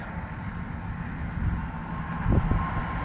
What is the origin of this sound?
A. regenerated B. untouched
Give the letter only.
B